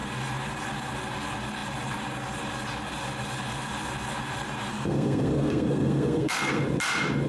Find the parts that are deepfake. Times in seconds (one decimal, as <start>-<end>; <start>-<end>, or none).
4.7-6.6